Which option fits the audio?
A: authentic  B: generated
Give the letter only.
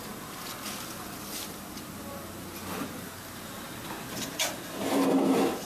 A